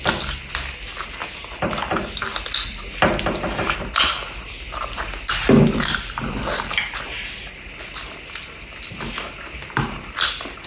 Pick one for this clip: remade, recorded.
recorded